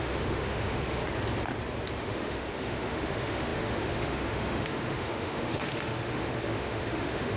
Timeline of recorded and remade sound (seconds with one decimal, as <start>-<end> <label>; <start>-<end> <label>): 0.0-1.0 remade; 1.0-2.0 recorded; 2.0-7.4 remade